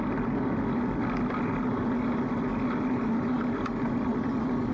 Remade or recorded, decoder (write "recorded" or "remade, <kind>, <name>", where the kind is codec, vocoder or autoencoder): recorded